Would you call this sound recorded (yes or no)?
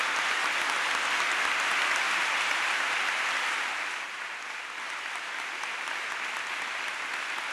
yes